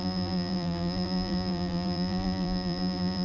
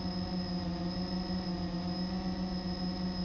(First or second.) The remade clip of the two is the first